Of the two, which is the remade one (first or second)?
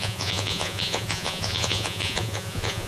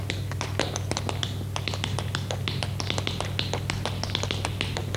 first